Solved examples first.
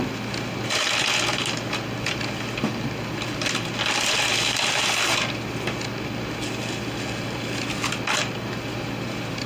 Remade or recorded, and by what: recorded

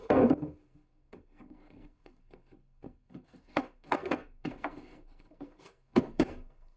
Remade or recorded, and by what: remade, codec, SNAC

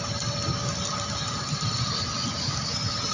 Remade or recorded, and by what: recorded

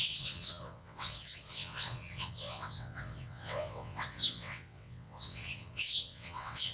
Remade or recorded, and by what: remade, vocoder, WaveNeXt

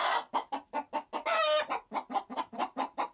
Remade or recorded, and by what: recorded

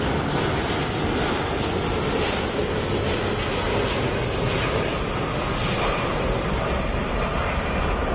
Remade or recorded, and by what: recorded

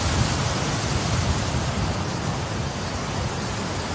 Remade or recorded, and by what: recorded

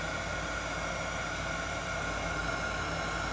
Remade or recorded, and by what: recorded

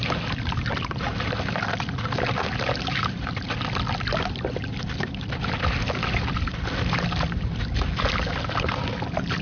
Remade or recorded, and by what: recorded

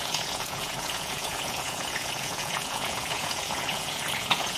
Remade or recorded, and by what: remade, vocoder, Vocos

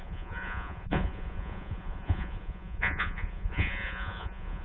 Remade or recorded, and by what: remade, vocoder, Vocos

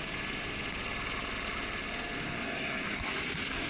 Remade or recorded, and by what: recorded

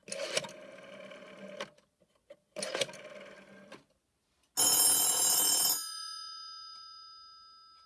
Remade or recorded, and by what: recorded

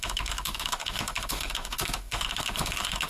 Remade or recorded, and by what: remade, autoencoder, DAC-VAE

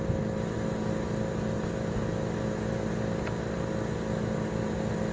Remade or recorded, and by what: recorded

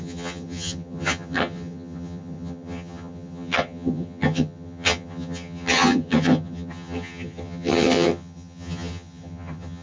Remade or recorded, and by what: remade, vocoder, HiFi-GAN